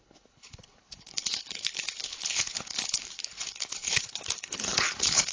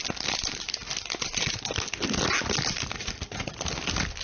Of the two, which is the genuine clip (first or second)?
second